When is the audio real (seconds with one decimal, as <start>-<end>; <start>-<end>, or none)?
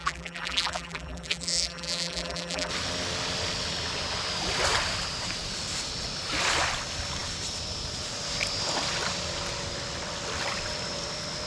2.7-11.5